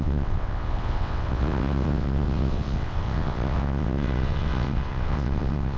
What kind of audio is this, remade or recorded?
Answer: remade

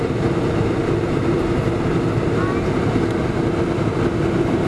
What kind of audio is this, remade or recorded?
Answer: recorded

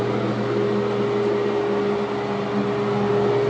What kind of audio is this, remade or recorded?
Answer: recorded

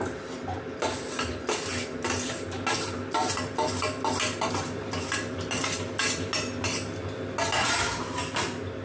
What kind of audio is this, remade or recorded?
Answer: recorded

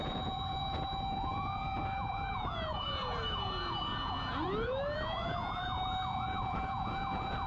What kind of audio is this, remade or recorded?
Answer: remade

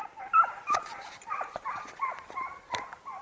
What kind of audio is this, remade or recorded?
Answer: recorded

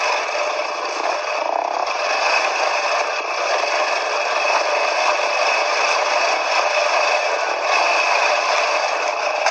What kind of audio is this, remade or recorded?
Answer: recorded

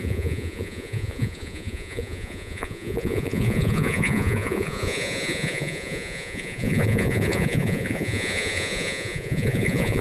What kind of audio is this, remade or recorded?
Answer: remade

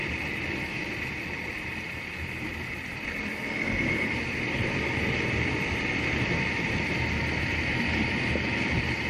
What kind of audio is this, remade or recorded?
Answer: recorded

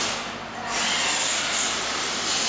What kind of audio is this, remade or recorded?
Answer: recorded